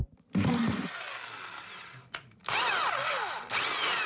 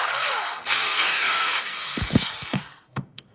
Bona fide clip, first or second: first